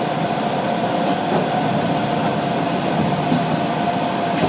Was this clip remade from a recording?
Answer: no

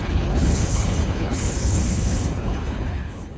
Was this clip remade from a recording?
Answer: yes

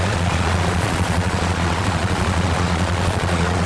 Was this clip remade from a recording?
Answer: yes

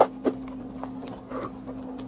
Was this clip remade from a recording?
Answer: no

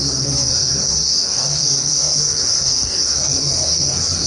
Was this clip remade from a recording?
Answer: yes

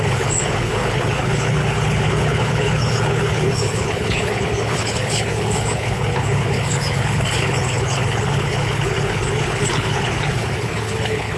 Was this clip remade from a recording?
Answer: yes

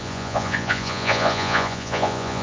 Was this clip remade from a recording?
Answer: yes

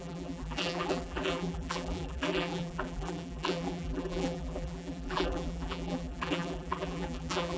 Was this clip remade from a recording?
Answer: yes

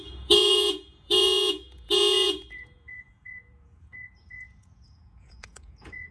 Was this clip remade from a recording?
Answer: yes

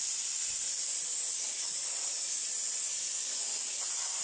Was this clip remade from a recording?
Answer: no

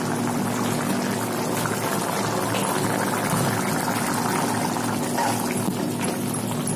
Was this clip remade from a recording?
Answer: no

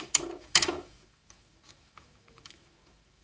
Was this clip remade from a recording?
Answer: yes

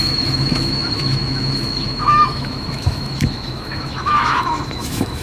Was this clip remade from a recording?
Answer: yes